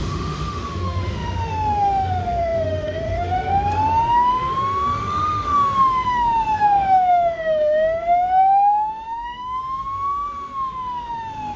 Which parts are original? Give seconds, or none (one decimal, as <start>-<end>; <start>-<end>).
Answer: none